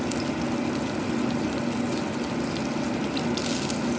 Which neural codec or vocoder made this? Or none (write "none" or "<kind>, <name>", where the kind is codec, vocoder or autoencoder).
none